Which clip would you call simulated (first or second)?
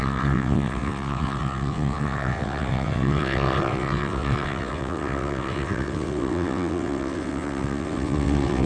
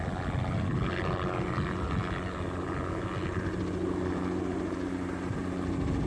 first